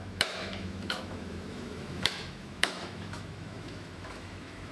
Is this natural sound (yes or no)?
no